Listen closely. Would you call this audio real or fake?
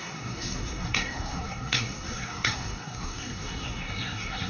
fake